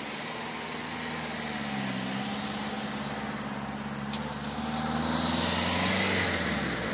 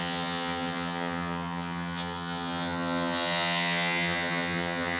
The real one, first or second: first